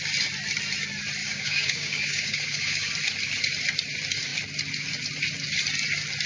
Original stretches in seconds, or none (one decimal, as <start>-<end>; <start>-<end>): 0.0-1.2; 2.9-6.3